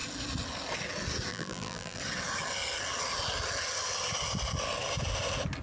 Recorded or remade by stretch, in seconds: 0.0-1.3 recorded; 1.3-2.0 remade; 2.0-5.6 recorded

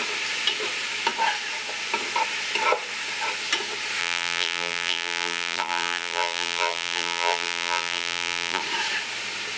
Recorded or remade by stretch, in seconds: 0.0-4.0 recorded; 4.0-8.6 remade; 8.6-9.6 recorded

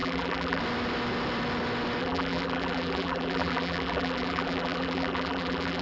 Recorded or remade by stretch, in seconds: 0.0-0.6 remade; 0.6-2.0 recorded; 2.0-5.8 remade